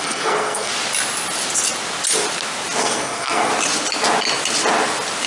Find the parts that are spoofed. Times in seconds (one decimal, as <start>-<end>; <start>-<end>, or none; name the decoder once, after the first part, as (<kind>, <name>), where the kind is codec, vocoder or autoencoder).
0.0-0.7 (codec, SNAC); 2.8-3.5